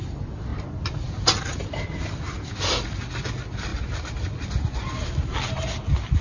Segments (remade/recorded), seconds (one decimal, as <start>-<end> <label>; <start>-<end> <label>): 0.0-6.2 recorded